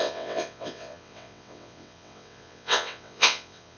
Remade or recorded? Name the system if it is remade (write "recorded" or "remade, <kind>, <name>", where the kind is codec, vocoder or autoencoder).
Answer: remade, vocoder, WaveNeXt